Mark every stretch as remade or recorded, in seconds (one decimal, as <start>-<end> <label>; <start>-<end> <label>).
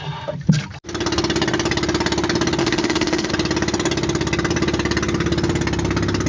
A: 0.0-2.6 recorded; 2.6-3.3 remade; 3.3-6.3 recorded